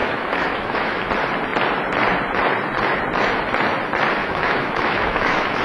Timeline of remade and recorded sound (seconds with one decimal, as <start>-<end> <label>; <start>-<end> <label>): 0.0-1.1 remade; 1.1-4.2 recorded; 4.2-5.6 remade